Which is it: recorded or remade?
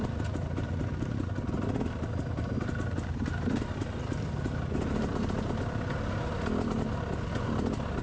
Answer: recorded